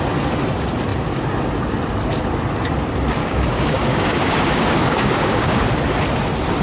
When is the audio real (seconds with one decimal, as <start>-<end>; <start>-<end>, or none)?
0.0-3.2; 5.7-6.6